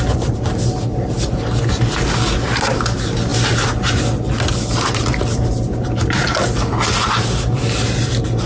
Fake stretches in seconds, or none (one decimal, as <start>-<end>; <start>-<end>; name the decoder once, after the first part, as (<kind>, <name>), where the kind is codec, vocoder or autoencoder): none